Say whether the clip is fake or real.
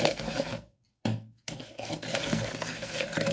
fake